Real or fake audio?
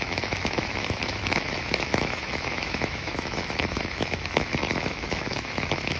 fake